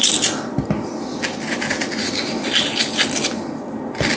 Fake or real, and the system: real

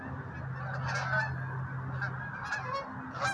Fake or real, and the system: real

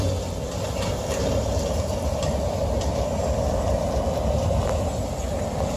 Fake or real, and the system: real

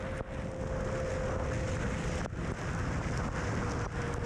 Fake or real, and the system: real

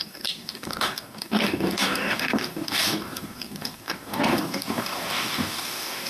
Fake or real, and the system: fake, codec, DAC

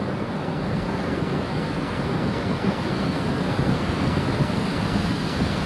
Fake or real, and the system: fake, codec, SNAC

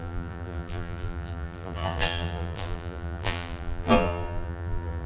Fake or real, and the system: fake, vocoder, BigVGAN v2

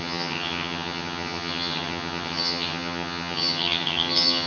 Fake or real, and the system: fake, vocoder, HiFi-GAN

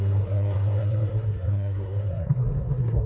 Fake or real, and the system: fake, codec, SNAC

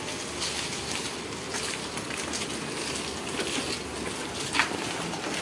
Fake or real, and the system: real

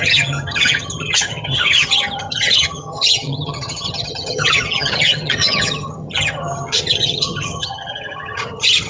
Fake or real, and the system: fake, vocoder, HiFi-GAN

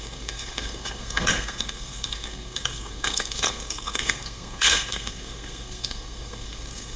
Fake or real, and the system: fake, codec, SNAC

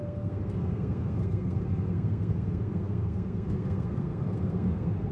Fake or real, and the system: fake, codec, SNAC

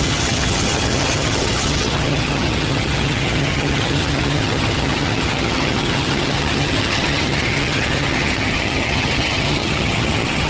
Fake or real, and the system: fake, vocoder, HiFi-GAN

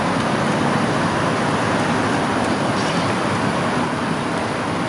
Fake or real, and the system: real